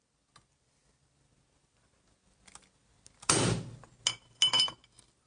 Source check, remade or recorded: recorded